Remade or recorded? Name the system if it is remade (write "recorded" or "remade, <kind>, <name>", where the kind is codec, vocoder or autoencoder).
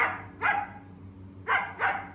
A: recorded